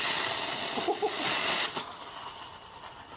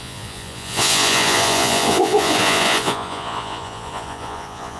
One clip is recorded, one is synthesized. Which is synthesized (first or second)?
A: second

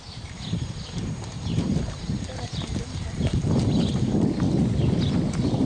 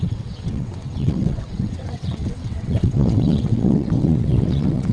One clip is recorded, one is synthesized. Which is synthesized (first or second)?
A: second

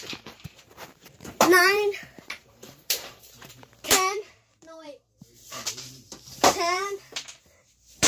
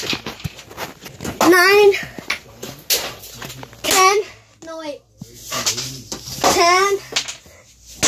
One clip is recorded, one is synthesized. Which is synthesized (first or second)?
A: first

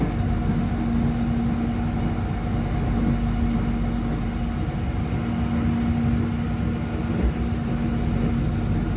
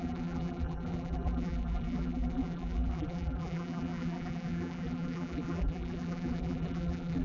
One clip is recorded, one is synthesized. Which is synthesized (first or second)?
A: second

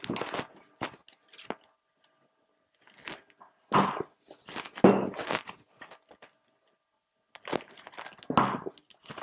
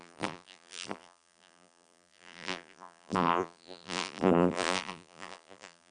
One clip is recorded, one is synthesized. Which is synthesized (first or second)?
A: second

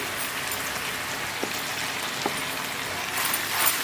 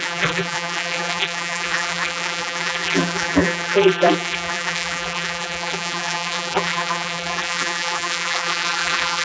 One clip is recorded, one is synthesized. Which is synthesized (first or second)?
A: second